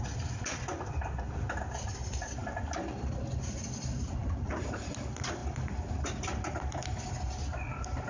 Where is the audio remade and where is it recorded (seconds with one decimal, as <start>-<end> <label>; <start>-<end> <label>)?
0.0-4.2 recorded; 4.2-4.9 remade; 4.9-8.1 recorded